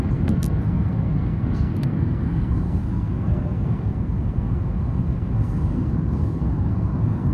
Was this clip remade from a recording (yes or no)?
yes